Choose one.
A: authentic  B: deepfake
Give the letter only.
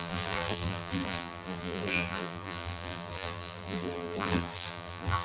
B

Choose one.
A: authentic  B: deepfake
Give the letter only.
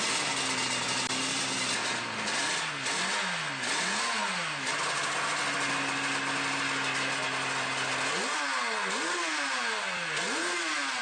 A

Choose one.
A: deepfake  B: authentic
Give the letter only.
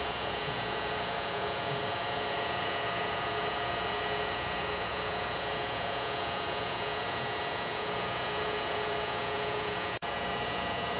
A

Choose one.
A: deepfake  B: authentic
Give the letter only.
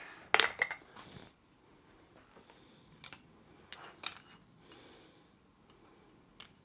B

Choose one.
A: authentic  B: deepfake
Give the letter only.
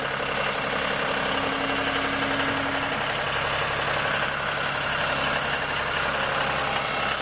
A